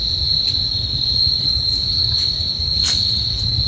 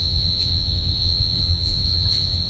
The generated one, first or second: second